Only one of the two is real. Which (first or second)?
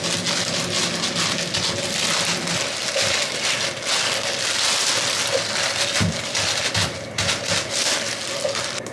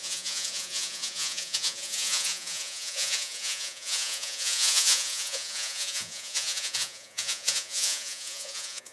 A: first